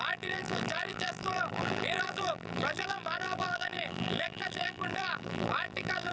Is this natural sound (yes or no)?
no